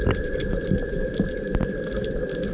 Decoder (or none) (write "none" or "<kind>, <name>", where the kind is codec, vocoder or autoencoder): none